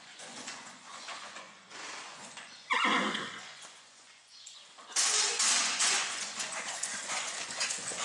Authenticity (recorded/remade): remade